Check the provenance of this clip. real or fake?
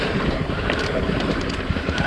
fake